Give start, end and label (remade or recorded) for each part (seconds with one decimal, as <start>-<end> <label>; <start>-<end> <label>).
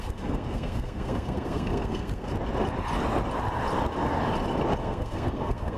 0.0-2.3 remade; 2.3-4.8 recorded; 4.8-5.8 remade